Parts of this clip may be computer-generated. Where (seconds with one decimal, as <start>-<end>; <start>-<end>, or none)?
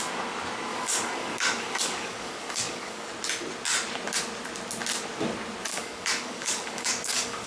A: 0.7-3.1; 5.7-7.5